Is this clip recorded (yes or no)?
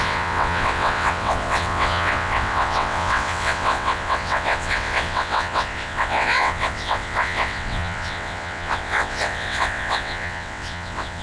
no